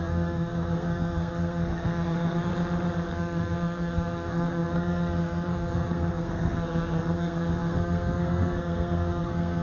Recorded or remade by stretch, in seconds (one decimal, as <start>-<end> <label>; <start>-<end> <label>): 0.0-2.5 remade; 2.5-3.1 recorded; 3.1-9.6 remade